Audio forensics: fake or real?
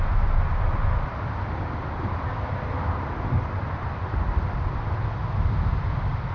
real